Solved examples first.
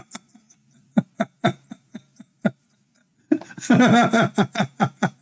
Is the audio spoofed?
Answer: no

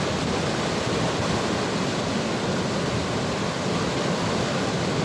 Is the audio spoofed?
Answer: no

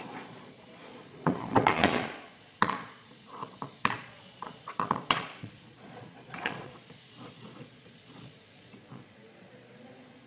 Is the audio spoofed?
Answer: yes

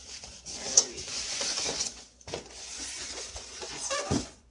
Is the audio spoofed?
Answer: yes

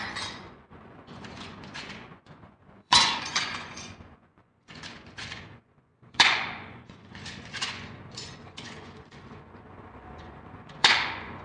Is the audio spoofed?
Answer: yes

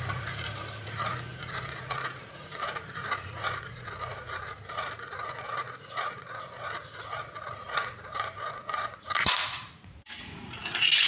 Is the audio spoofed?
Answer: yes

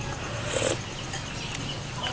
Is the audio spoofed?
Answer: no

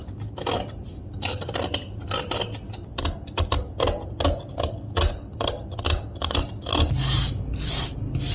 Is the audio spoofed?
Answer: no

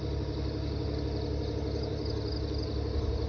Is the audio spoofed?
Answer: no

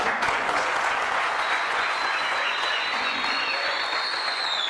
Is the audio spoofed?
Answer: yes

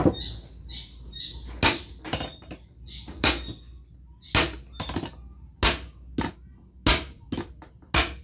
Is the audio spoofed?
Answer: no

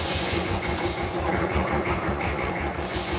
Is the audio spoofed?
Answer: yes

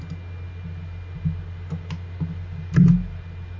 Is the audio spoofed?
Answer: no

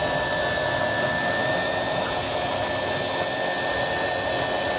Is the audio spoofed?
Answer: no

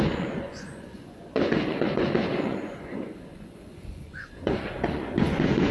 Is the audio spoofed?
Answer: yes